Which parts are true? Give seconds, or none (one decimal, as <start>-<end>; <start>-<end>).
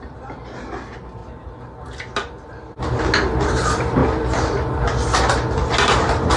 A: 0.0-6.4